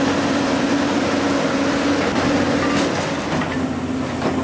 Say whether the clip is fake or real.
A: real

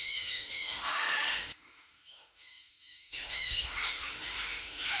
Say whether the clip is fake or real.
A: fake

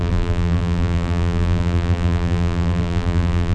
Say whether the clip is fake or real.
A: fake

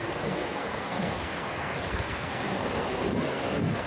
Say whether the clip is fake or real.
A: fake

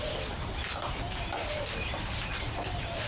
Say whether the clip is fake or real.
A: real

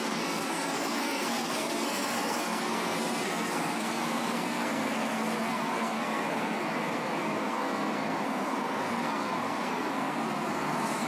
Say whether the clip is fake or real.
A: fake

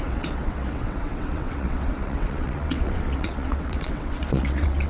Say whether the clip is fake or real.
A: fake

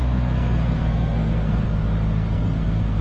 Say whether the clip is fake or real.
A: fake